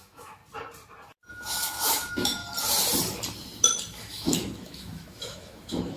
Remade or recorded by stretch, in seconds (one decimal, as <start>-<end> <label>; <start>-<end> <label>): 0.0-0.4 remade; 0.4-1.3 recorded; 1.3-2.4 remade; 2.4-4.0 recorded; 4.0-6.0 remade